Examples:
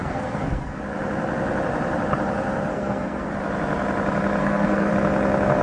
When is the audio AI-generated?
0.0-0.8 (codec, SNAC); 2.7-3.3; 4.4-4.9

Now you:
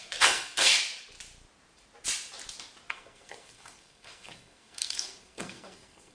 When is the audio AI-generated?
0.0-0.7 (codec, SNAC); 2.9-6.1

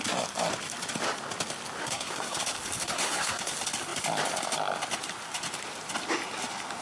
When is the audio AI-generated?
1.8-2.4 (codec, SNAC); 2.8-3.5

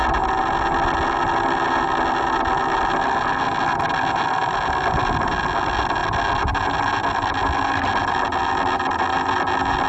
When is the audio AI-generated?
none

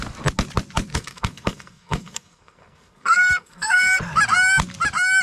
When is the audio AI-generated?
0.9-4.0 (codec, SNAC)

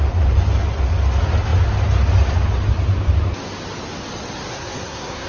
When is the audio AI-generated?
4.5-5.3 (codec, SNAC)

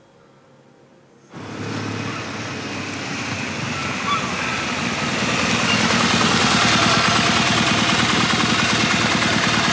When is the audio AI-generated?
none

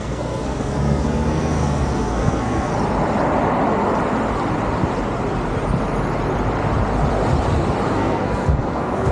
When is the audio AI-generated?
0.0-2.7 (codec, SNAC); 7.9-9.1